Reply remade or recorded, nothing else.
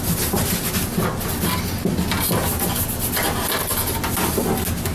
recorded